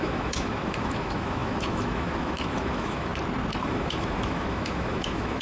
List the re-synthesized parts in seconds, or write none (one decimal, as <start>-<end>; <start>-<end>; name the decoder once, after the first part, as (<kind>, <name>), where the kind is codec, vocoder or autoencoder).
0.0-3.1 (autoencoder, DAC-VAE); 3.6-5.4